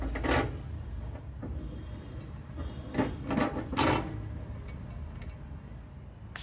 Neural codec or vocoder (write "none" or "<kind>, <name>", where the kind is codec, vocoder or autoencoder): none